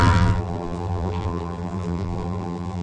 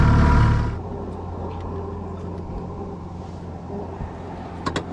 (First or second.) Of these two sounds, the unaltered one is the second